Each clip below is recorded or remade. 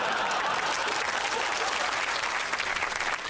recorded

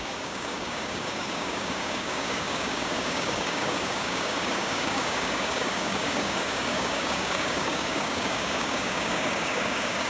remade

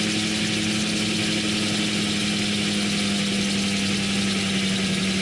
recorded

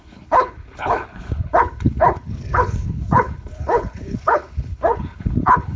remade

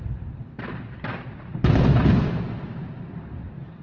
recorded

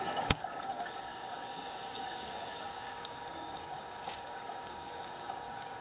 remade